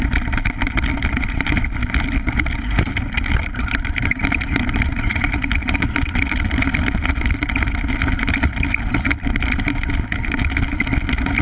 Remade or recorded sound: recorded